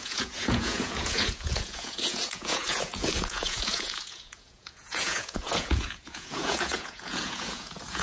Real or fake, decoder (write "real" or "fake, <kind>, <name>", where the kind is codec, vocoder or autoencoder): fake, vocoder, Vocos